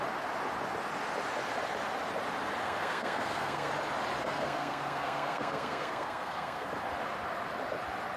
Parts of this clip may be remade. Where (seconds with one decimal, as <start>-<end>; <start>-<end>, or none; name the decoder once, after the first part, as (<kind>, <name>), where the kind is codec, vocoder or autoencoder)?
2.6-3.7 (codec, SNAC); 4.2-6.7

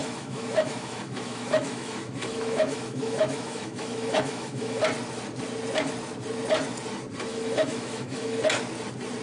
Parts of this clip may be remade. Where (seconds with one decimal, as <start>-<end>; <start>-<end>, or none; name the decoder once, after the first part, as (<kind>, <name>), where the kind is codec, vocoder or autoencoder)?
0.0-4.8 (autoencoder, DAC-VAE); 7.3-8.4

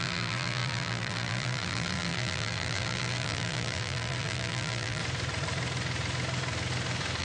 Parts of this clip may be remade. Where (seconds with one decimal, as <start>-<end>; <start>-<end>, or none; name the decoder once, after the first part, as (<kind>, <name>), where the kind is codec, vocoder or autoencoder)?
0.0-5.0 (vocoder, BigVGAN v2)

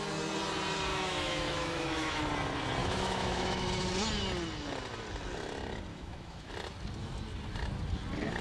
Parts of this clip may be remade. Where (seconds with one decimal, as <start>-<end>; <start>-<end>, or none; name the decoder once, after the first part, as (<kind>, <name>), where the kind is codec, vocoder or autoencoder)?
0.9-2.2 (autoencoder, DAC-VAE); 2.8-3.7; 5.9-6.5